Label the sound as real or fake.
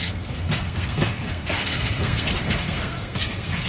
fake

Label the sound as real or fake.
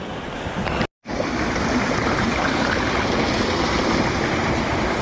real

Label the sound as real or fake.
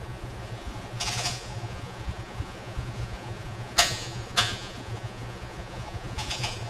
fake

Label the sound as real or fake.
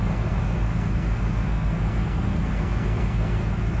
fake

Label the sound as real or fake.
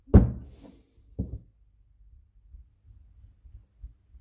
real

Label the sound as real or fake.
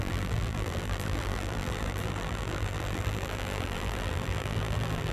fake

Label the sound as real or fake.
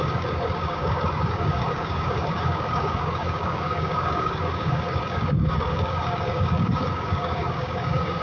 fake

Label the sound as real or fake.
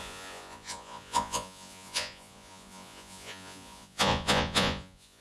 fake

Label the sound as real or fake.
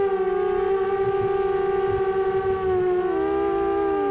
real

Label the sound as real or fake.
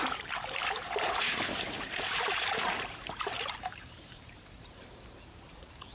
fake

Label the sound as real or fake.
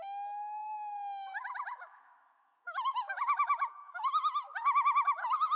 fake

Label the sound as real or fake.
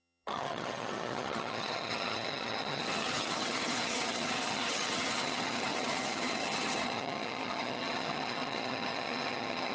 fake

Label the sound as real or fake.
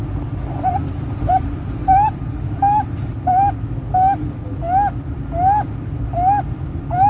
real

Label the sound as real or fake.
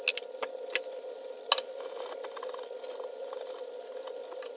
real